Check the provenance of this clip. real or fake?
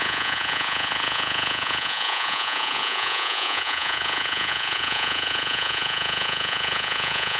fake